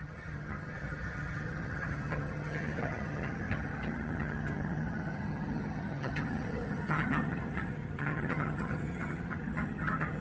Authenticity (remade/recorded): remade